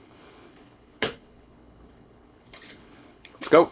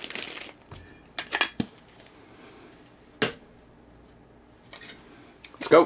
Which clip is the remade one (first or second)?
first